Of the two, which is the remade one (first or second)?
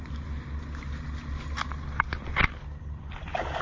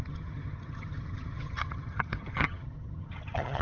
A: second